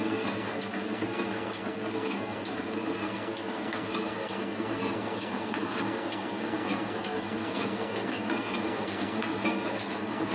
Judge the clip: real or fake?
fake